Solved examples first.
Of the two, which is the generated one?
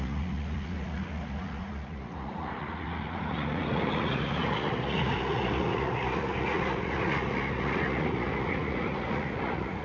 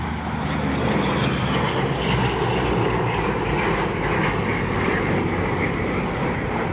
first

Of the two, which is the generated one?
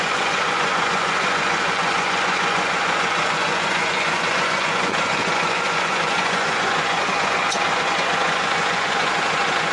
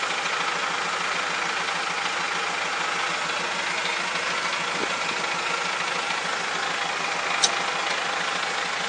first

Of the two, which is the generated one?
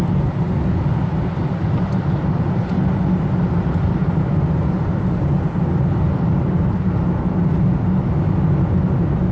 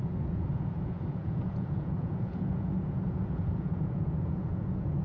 second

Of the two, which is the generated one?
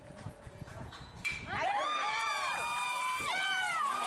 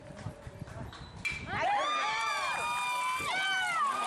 first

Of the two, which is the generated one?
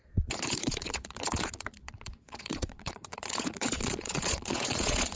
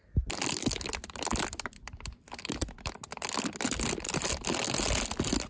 first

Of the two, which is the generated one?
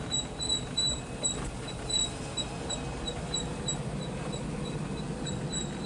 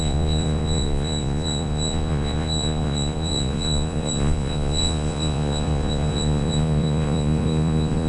second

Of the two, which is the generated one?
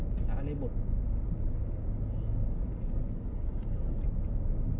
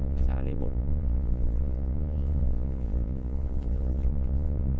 second